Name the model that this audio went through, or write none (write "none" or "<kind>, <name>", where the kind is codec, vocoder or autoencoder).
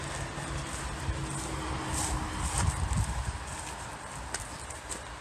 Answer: none